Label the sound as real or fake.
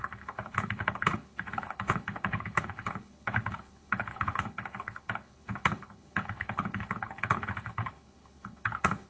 fake